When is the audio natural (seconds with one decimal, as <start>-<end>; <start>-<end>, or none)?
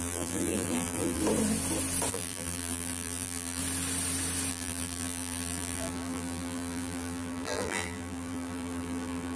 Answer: 1.2-2.1; 3.6-4.5